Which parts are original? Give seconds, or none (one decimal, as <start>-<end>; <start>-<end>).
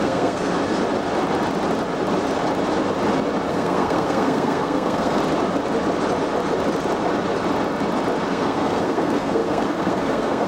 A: 0.5-3.5; 5.2-8.3